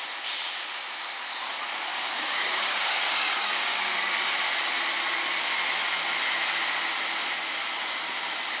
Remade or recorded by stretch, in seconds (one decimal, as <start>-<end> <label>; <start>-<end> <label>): 0.0-1.9 recorded; 1.9-4.1 remade; 4.1-8.6 recorded

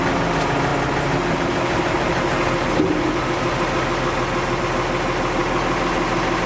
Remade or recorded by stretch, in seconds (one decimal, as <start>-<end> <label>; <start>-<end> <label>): 0.0-6.5 recorded

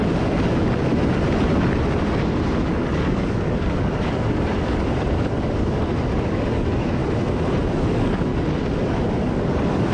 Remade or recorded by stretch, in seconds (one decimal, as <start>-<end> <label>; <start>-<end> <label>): 0.0-0.9 remade; 0.9-2.7 recorded; 2.7-7.0 remade; 7.0-7.7 recorded; 7.7-8.3 remade; 8.3-8.8 recorded; 8.8-9.9 remade